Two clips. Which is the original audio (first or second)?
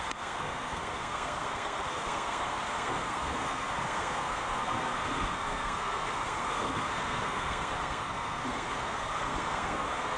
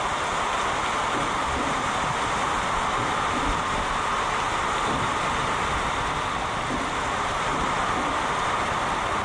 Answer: second